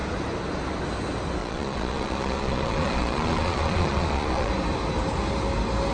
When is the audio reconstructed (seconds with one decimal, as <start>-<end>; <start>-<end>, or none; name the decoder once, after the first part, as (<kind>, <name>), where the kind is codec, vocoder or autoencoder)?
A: 1.4-4.5 (vocoder, Vocos)